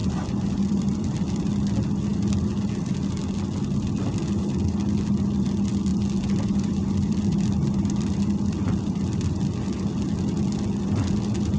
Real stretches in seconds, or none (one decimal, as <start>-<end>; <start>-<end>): 1.4-5.9; 8.2-11.6